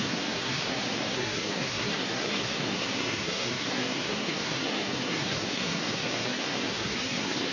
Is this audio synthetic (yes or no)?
yes